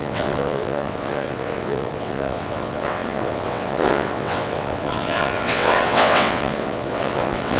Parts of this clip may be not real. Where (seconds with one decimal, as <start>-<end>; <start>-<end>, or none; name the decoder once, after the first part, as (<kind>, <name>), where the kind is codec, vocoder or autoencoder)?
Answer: 0.0-7.6 (vocoder, WaveNeXt)